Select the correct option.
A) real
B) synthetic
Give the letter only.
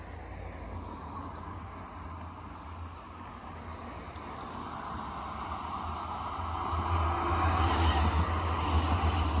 A